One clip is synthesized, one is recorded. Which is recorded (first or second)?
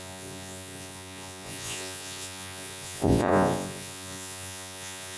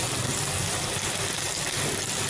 second